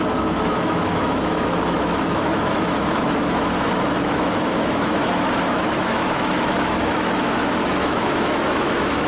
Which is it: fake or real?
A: fake